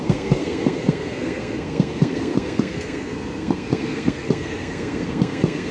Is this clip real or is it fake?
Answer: fake